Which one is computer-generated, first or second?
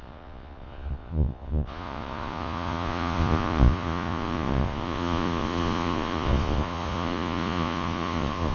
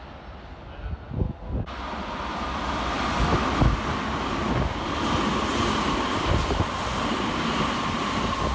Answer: first